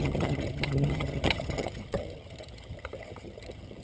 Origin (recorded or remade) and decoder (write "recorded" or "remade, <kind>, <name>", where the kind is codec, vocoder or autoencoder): remade, vocoder, HiFi-GAN